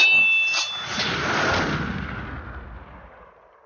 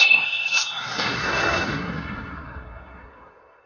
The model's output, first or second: second